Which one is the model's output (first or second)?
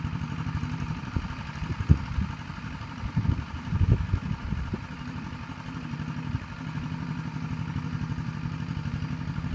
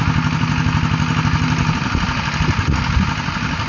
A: first